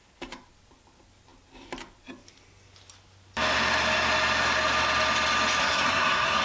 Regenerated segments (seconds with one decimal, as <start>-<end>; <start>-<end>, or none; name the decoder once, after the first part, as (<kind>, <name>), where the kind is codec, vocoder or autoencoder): 5.6-6.4 (codec, SNAC)